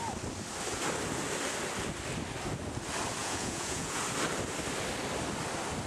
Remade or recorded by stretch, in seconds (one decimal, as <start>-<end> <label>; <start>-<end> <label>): 0.0-3.2 recorded; 3.2-4.0 remade; 4.0-5.9 recorded